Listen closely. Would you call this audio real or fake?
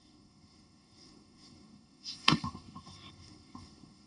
fake